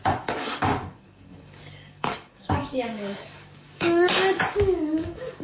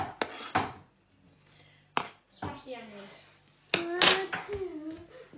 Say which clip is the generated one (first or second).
first